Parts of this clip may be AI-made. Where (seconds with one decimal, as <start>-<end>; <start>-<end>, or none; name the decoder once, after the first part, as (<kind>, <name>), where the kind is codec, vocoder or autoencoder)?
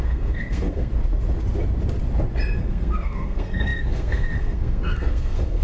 0.0-0.9 (codec, SNAC); 2.6-5.6